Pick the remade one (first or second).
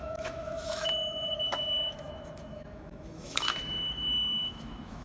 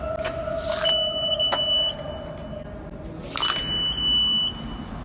first